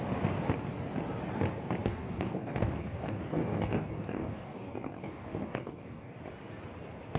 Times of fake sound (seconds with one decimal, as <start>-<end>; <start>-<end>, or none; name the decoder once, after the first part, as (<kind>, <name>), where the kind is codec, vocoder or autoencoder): 1.9-6.2 (codec, DAC)